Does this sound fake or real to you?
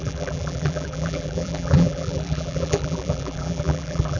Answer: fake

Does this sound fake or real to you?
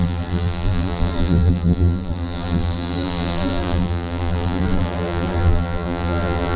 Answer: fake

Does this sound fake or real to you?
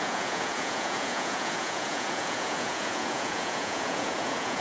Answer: fake